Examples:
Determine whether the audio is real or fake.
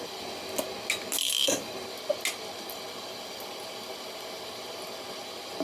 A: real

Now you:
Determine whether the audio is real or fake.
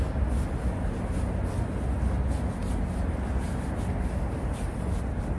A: real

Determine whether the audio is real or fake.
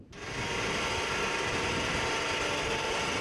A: real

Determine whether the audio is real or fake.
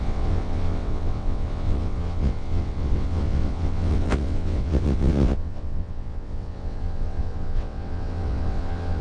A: fake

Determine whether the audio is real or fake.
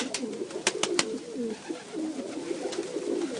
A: real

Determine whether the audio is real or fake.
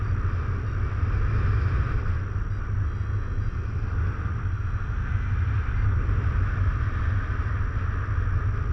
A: real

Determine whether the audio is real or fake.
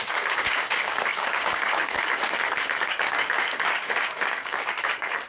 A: fake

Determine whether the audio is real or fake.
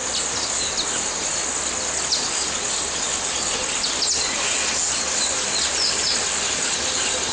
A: real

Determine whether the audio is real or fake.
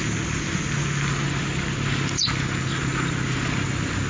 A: real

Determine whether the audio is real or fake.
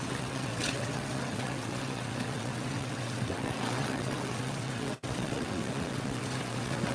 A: fake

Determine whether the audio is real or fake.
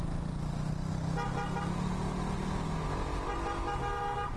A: real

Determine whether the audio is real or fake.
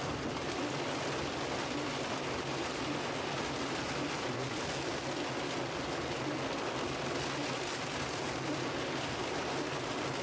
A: real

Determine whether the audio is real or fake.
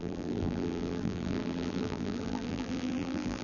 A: fake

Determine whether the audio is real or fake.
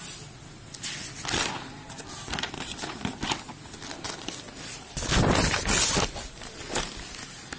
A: real